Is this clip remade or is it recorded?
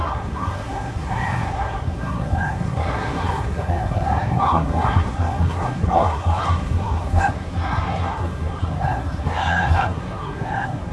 remade